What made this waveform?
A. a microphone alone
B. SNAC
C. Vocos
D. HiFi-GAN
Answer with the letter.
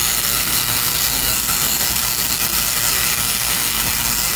B